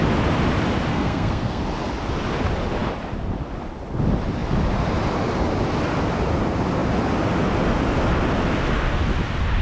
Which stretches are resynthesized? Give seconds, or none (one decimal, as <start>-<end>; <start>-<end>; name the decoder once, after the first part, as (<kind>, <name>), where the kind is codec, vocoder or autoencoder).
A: 0.9-1.6 (codec, SNAC)